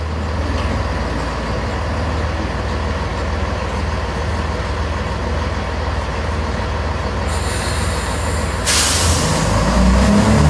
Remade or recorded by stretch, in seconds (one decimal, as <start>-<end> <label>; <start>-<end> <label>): 0.0-10.5 recorded